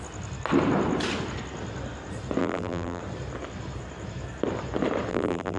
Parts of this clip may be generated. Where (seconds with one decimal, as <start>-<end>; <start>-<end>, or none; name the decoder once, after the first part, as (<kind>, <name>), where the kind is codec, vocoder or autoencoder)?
2.4-3.0 (vocoder, BigVGAN v2); 5.1-5.6